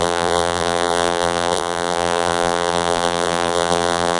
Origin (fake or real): fake